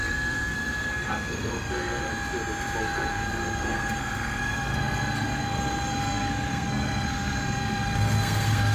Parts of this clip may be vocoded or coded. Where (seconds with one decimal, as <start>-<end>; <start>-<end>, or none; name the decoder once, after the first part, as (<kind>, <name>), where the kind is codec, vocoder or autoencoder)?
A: 0.0-2.1 (codec, SNAC); 2.8-8.7